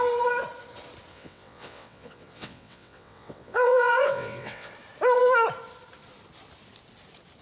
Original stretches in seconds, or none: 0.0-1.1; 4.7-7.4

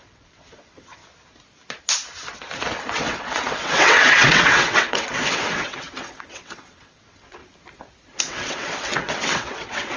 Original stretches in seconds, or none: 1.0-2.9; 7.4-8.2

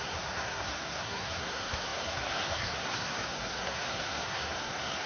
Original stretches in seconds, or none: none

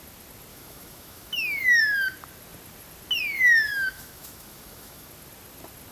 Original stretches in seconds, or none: 0.0-0.5; 1.8-3.7; 5.1-5.9

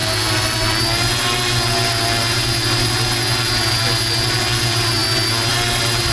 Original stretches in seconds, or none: 0.0-6.1

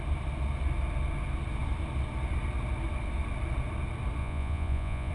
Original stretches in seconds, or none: 0.0-4.2

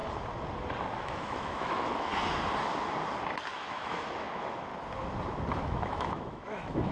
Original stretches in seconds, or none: 0.0-1.0; 2.1-3.5; 4.7-5.6

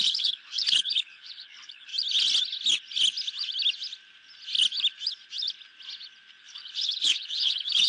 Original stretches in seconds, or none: 1.9-6.4